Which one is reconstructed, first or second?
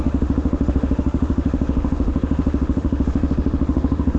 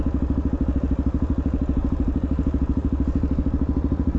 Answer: first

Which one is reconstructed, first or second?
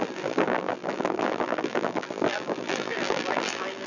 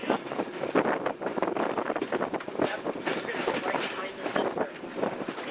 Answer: first